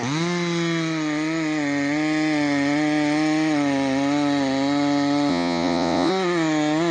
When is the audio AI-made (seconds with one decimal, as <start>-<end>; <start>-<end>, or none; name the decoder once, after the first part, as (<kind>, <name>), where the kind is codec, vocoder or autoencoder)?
5.3-6.1 (vocoder, Vocos)